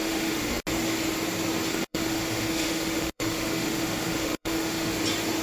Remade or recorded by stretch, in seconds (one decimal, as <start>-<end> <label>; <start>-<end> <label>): 0.0-0.6 remade; 0.6-1.7 recorded; 1.7-4.9 remade; 4.9-5.4 recorded